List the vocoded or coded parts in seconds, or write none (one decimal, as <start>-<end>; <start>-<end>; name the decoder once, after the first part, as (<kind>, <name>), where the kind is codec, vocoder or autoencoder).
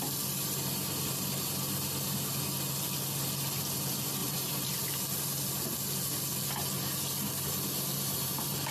4.2-4.7 (vocoder, BigVGAN v2)